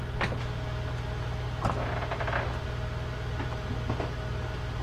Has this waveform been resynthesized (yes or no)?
no